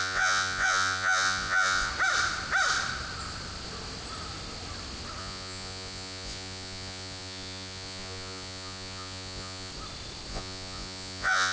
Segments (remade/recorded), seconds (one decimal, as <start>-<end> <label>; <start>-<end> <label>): 0.0-1.9 remade; 1.9-5.2 recorded; 5.2-9.7 remade; 9.7-10.3 recorded; 10.3-11.5 remade